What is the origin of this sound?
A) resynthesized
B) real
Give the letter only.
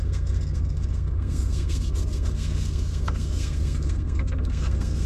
A